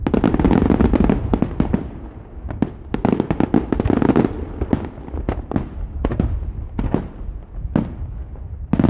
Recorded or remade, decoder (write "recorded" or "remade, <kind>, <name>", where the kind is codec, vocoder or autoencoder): recorded